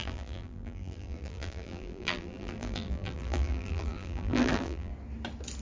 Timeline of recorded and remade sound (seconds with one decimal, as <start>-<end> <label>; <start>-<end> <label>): 0.0-4.9 remade; 4.9-5.6 recorded